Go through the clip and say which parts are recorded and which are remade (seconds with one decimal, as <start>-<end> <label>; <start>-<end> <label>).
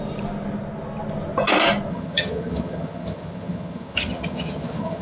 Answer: 0.0-1.9 recorded; 1.9-5.0 remade